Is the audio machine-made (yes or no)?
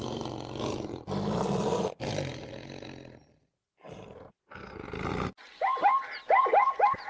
no